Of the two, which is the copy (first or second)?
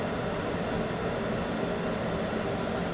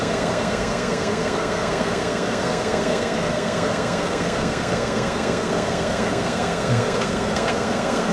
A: second